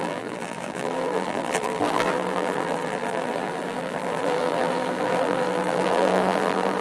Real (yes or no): no